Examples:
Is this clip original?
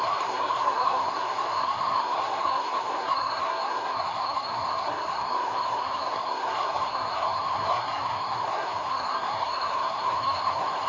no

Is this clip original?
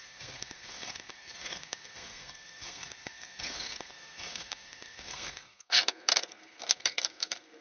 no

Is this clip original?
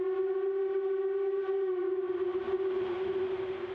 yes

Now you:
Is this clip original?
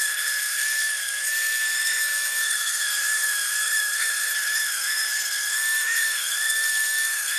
no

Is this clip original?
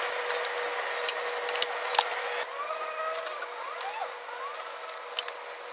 yes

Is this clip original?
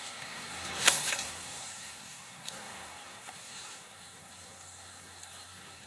no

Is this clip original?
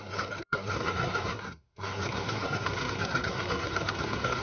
no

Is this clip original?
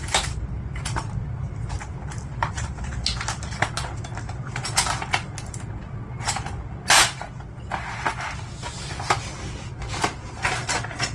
yes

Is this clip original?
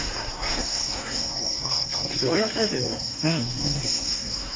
no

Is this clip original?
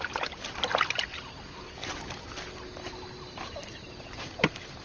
yes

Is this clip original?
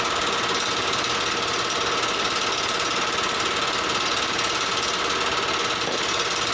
yes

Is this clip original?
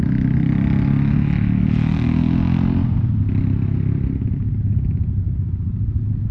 yes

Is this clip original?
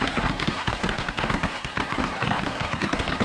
no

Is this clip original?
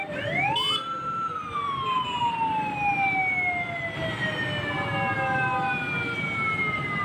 yes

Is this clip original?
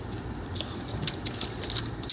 yes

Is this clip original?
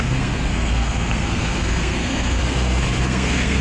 no